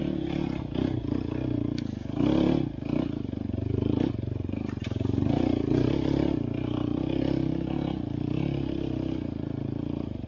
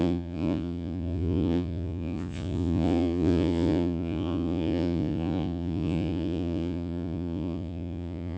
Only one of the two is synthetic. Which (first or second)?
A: second